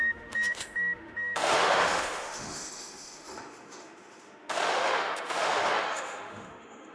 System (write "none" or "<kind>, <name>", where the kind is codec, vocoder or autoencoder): autoencoder, DAC-VAE